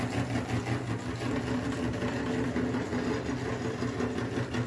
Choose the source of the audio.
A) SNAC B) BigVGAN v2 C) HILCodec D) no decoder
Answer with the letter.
D